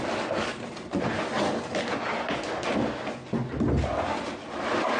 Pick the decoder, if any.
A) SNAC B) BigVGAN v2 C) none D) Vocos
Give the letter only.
C